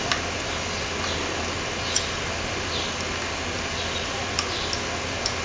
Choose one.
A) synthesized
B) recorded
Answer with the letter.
B